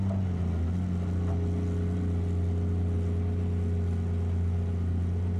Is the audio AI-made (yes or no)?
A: no